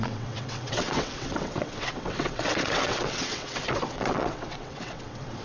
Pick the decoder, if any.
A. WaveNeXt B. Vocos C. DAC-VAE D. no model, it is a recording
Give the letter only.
A